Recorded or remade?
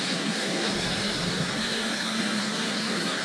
remade